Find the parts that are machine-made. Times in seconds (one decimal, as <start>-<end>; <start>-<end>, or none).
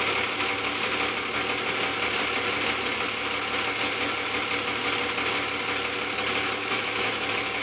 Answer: 6.6-7.6